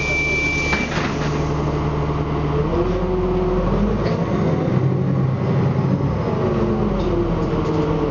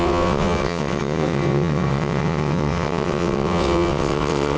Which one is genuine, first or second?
first